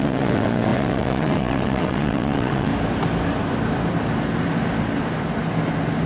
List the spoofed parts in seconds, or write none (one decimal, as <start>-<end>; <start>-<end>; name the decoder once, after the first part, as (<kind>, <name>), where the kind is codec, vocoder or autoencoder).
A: 0.0-2.7 (vocoder, WaveNeXt)